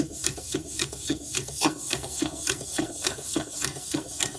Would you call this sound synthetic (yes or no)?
yes